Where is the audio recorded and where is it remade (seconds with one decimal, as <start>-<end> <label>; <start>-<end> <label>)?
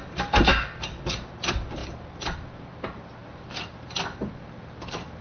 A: 0.0-0.5 remade; 0.5-1.0 recorded; 1.0-5.2 remade